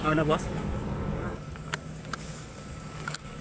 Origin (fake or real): fake